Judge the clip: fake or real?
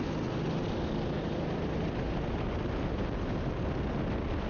real